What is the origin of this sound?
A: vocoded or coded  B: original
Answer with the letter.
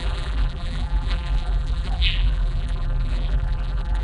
A